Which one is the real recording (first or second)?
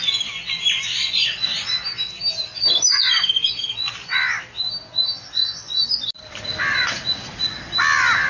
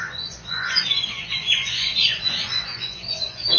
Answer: first